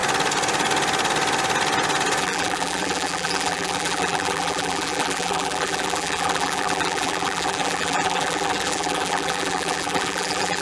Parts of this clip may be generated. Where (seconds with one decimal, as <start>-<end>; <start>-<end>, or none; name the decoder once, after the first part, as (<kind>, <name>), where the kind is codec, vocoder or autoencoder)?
2.2-10.6 (vocoder, BigVGAN v2)